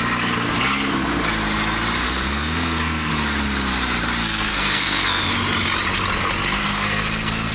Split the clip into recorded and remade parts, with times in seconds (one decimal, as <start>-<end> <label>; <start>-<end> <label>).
0.0-2.0 recorded; 2.0-3.1 remade; 3.1-4.2 recorded; 4.2-5.2 remade; 5.2-6.6 recorded; 6.6-7.5 remade